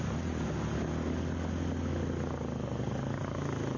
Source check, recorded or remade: recorded